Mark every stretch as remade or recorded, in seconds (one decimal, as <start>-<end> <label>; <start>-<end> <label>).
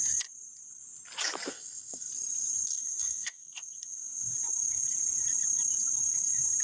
0.0-1.5 recorded; 1.5-2.1 remade; 2.1-2.7 recorded; 2.7-4.2 remade; 4.2-6.6 recorded